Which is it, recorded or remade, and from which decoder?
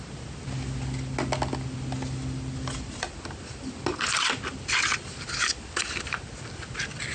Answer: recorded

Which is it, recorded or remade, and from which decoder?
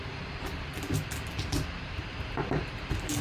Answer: recorded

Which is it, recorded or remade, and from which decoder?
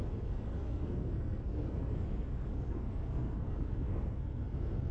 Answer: remade, codec, SNAC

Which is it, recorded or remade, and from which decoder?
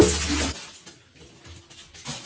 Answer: recorded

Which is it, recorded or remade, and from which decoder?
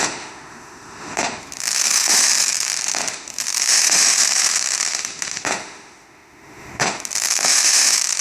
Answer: remade, autoencoder, DAC-VAE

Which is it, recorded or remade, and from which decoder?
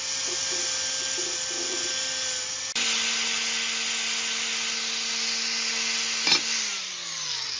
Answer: recorded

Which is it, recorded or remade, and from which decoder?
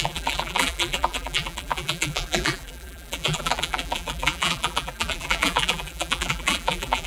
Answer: remade, vocoder, BigVGAN v2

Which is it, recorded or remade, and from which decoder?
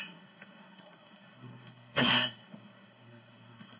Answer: remade, codec, SNAC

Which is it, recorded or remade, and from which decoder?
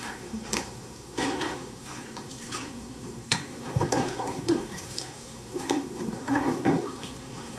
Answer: remade, codec, SNAC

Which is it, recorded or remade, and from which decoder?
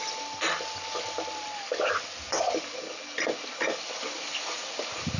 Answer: recorded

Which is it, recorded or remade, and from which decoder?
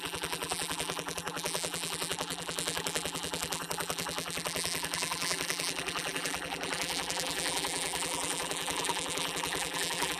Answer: remade, vocoder, BigVGAN v2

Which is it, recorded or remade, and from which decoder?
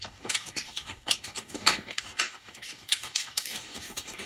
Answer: remade, codec, DAC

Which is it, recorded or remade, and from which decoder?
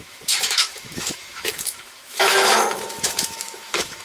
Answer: remade, autoencoder, DAC-VAE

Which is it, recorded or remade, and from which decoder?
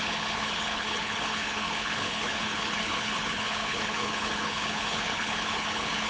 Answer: remade, codec, HILCodec